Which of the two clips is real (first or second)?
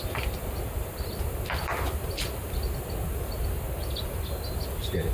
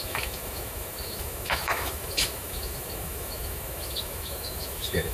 first